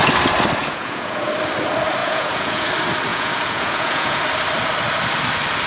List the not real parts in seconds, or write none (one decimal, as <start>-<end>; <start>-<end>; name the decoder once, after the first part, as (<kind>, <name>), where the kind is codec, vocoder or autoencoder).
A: 0.6-1.3 (vocoder, Vocos); 2.0-2.7; 3.1-4.2

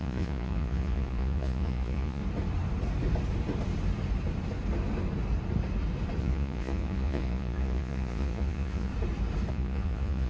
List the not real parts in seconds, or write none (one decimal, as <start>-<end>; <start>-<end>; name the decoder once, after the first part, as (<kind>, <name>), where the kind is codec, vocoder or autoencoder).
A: 0.0-2.2 (vocoder, Vocos); 6.2-8.9; 9.5-10.3